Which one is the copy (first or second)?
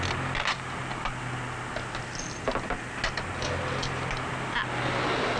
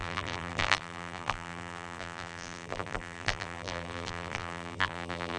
second